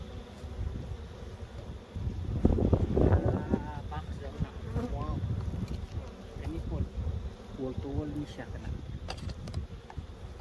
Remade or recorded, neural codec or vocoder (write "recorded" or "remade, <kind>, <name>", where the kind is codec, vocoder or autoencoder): recorded